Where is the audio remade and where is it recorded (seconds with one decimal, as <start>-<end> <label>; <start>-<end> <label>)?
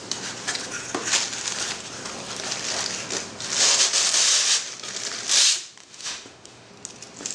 0.0-5.8 recorded; 5.8-6.7 remade; 6.7-7.3 recorded